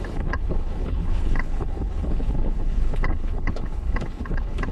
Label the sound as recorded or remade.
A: remade